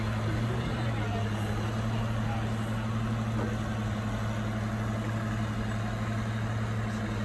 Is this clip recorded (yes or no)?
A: yes